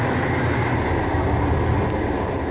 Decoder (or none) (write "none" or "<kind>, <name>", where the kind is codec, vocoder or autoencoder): none